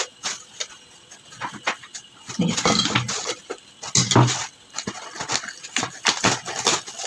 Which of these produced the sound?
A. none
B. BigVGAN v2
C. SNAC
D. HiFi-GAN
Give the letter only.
A